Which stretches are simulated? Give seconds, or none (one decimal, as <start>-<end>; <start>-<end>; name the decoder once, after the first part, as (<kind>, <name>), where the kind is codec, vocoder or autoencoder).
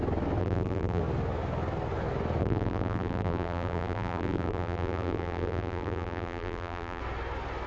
0.4-1.0 (vocoder, BigVGAN v2); 2.4-7.0